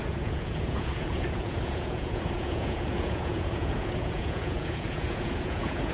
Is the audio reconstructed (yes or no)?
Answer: yes